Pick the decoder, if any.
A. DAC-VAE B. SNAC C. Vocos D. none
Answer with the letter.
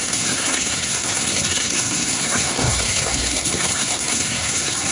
B